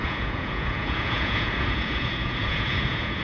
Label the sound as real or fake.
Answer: fake